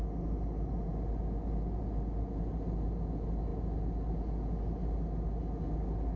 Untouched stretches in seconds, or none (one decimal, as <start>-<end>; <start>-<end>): 0.0-6.2